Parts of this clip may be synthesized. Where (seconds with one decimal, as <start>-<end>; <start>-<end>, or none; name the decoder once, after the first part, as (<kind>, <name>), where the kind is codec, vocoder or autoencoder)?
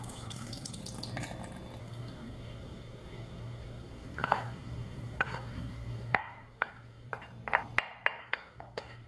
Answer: 0.0-0.8 (codec, SNAC); 1.8-7.1; 8.2-9.1